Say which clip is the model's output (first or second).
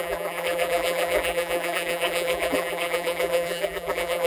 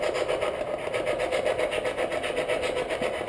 first